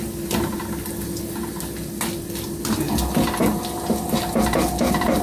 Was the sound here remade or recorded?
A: recorded